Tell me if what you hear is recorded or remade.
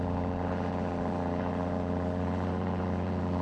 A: remade